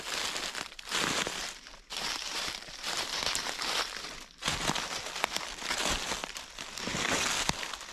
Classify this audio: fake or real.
real